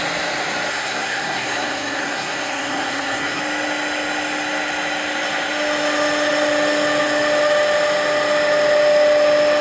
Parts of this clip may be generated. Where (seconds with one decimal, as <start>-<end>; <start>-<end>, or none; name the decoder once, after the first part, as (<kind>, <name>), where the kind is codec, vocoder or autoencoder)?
0.7-3.4 (codec, SNAC)